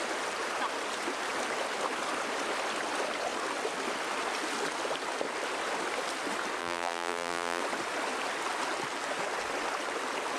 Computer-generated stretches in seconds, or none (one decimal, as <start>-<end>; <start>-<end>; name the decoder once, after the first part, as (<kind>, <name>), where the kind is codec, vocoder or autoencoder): 6.6-7.6 (vocoder, BigVGAN v2)